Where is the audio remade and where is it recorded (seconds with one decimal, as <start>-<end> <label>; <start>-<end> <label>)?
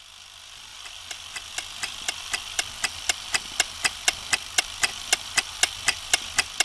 0.0-6.6 recorded